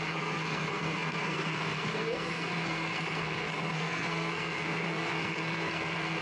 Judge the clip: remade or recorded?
remade